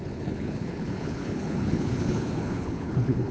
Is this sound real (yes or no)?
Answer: no